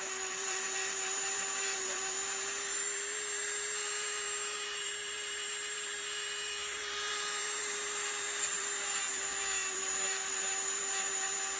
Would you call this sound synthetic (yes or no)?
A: yes